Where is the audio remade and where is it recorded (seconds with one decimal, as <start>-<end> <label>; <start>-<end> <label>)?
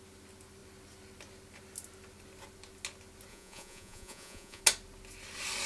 0.0-3.3 recorded; 3.3-4.6 remade; 4.6-5.7 recorded